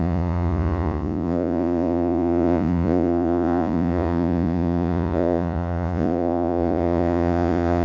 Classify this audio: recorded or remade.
remade